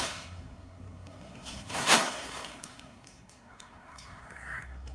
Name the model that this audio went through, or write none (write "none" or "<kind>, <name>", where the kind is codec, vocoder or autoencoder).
codec, SNAC